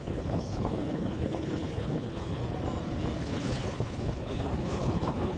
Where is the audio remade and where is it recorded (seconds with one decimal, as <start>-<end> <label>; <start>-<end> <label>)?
0.0-2.4 remade; 2.4-3.2 recorded; 3.2-5.4 remade